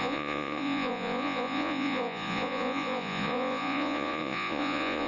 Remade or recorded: remade